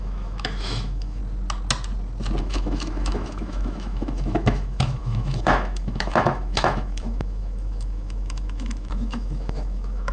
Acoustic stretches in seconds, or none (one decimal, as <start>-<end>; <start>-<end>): 1.2-2.4